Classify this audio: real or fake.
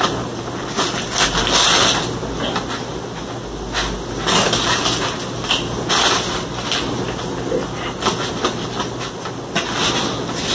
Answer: real